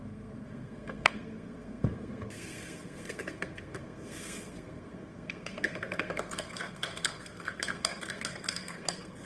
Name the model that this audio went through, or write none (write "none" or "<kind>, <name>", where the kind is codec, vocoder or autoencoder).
codec, SNAC